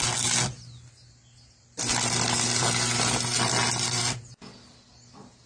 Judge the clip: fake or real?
real